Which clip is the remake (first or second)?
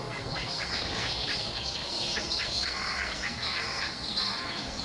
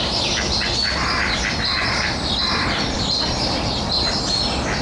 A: first